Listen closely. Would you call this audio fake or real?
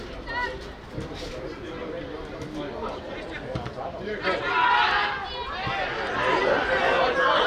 real